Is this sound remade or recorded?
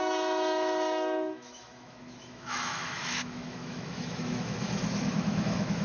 remade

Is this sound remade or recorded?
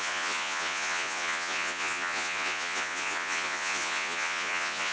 remade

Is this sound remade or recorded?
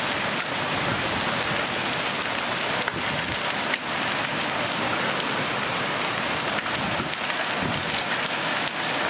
recorded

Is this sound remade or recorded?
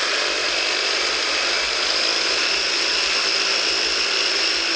recorded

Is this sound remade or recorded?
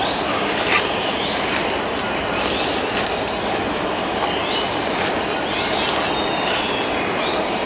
recorded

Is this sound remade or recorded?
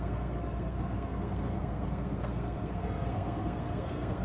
remade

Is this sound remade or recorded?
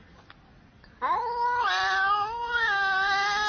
recorded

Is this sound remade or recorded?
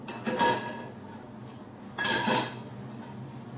recorded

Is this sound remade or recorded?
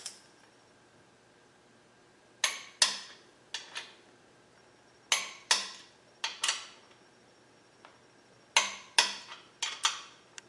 recorded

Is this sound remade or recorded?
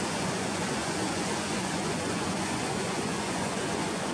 remade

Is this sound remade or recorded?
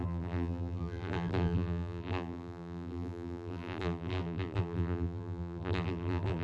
remade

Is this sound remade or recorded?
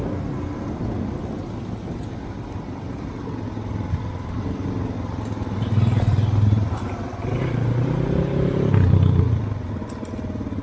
recorded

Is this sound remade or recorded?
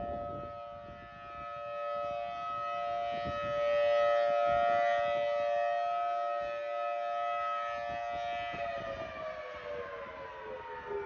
recorded